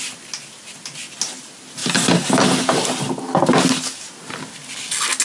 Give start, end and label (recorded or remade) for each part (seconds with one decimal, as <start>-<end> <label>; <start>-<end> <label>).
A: 0.0-5.2 recorded